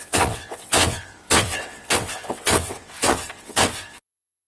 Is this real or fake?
fake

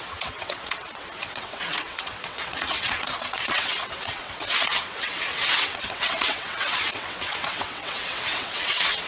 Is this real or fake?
fake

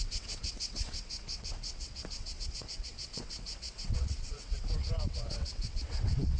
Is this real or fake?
fake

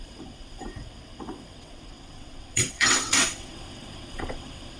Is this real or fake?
fake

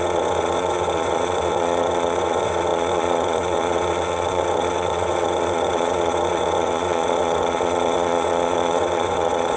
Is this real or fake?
fake